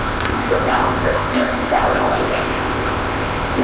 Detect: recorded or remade remade